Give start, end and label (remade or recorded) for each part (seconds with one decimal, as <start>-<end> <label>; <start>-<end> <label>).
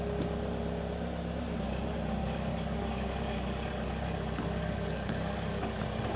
0.0-2.2 recorded; 2.2-5.8 remade; 5.8-6.2 recorded